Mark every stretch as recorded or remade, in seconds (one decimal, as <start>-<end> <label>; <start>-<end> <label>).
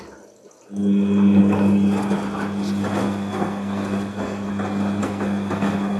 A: 0.0-3.0 recorded; 3.0-4.5 remade; 4.5-5.0 recorded; 5.0-6.0 remade